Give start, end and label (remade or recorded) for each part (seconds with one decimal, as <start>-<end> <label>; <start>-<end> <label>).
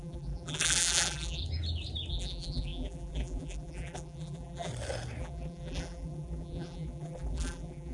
0.0-1.4 remade; 1.4-2.1 recorded; 2.1-4.7 remade; 4.7-5.2 recorded; 5.2-7.9 remade